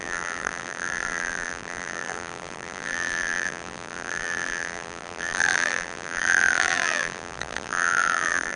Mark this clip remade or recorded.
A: remade